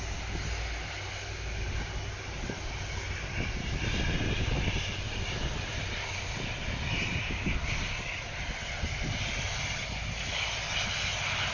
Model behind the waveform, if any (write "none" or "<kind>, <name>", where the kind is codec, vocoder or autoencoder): none